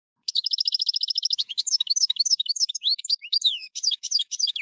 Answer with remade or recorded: remade